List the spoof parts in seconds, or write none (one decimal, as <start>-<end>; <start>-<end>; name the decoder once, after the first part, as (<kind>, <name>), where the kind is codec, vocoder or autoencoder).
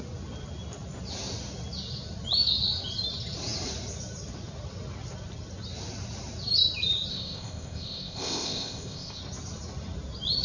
7.1-9.2 (codec, ZipCodec)